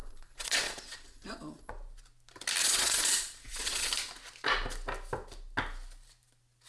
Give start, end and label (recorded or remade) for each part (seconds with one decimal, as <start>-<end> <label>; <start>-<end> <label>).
0.0-1.7 remade; 1.7-2.6 recorded; 2.6-3.9 remade; 3.9-6.7 recorded